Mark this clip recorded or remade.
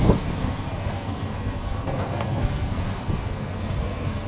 remade